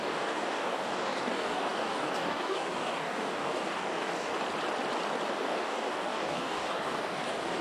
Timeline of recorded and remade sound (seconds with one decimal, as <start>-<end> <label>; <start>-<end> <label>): 0.0-4.3 remade; 4.3-5.3 recorded; 5.3-7.6 remade